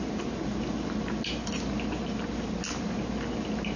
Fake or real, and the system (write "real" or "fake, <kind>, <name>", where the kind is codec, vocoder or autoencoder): real